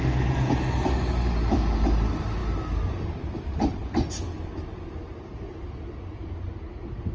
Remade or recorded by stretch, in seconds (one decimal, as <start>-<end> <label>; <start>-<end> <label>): 0.0-7.1 recorded